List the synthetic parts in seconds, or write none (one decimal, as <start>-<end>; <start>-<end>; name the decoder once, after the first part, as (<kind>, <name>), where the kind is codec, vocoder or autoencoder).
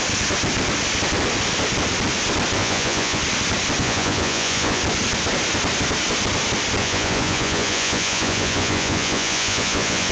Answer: 2.6-3.2 (vocoder, Vocos); 3.8-4.8; 6.8-10.1